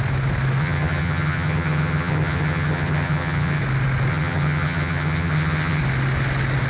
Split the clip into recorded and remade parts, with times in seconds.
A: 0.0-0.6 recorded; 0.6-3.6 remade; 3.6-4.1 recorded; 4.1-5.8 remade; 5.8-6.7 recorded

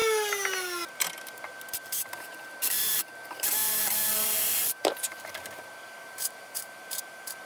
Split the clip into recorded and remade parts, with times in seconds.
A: 0.0-2.0 recorded; 2.0-7.5 remade

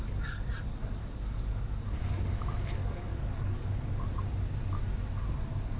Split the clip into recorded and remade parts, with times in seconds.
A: 0.0-1.0 recorded; 1.0-2.4 remade; 2.4-2.8 recorded; 2.8-4.0 remade; 4.0-5.8 recorded

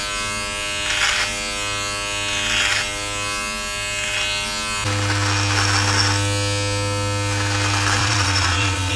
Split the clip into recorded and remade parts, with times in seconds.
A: 0.0-8.0 recorded; 8.0-9.0 remade

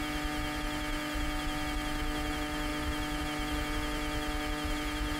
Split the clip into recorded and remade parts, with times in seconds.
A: 0.0-5.2 recorded

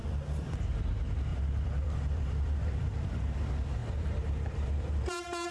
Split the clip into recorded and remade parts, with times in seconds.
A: 0.0-0.9 remade; 0.9-1.3 recorded; 1.3-3.4 remade; 3.4-3.8 recorded; 3.8-5.5 remade

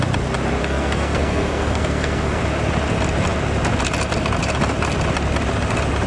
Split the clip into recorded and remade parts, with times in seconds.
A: 0.0-0.6 recorded; 0.6-2.4 remade; 2.4-6.1 recorded

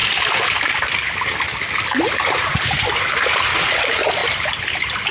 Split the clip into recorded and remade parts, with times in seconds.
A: 0.0-5.1 recorded